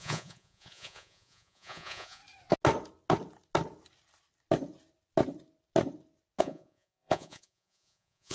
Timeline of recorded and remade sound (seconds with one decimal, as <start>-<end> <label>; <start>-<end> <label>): 0.0-2.2 remade; 2.2-6.4 recorded; 6.4-8.3 remade